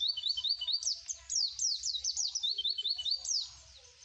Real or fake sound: real